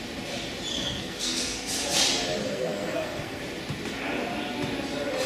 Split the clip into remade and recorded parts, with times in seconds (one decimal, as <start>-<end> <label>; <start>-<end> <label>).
0.0-0.7 recorded; 0.7-2.0 remade; 2.0-2.4 recorded; 2.4-3.4 remade; 3.4-5.3 recorded